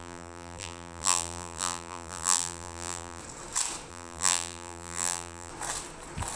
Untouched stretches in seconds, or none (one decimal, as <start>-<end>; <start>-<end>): 3.2-3.9; 5.5-6.4